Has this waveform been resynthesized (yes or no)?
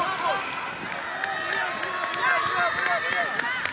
no